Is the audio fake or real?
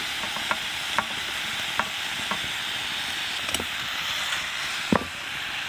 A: real